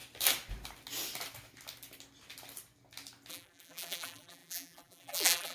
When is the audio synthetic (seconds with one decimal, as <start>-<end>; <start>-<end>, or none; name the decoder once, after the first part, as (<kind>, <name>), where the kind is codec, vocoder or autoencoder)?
3.3-5.5 (vocoder, BigVGAN v2)